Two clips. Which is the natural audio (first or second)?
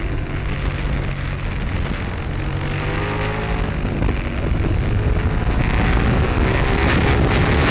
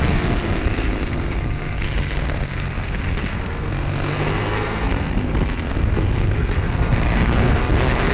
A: first